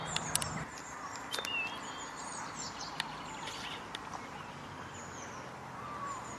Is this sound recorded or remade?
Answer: recorded